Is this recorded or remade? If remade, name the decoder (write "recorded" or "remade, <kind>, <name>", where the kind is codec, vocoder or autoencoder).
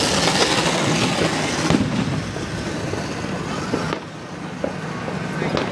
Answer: recorded